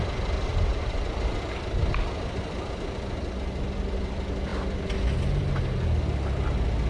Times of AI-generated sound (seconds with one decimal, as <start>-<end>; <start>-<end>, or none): 0.5-1.0